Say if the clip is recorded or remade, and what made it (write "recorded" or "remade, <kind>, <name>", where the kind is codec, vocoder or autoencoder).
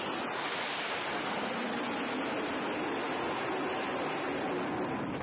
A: recorded